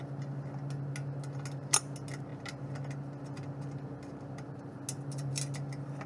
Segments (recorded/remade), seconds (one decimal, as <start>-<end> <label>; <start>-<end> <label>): 0.0-6.1 recorded